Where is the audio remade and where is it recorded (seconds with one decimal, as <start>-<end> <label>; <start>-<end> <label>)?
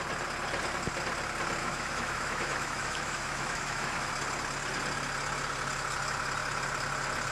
0.0-1.6 recorded; 1.6-4.1 remade; 4.1-7.3 recorded